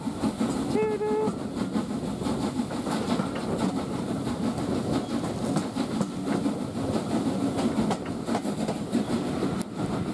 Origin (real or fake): real